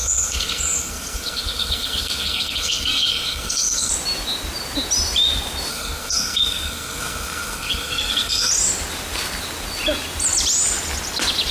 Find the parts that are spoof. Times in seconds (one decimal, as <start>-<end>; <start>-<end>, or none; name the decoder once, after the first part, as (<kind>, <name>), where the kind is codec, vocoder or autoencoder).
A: 0.0-3.9 (codec, SNAC); 5.7-8.5